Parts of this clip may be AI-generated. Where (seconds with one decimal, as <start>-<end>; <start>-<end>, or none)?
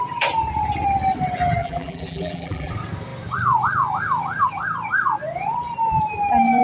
1.6-2.7